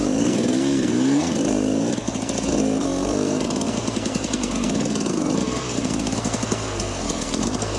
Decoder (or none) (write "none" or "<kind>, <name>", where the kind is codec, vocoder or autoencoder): codec, SNAC